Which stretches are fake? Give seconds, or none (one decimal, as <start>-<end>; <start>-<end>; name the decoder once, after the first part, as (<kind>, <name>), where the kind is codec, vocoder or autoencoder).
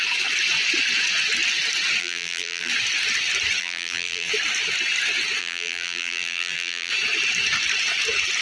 2.0-2.7 (vocoder, BigVGAN v2); 3.6-4.3; 5.4-6.9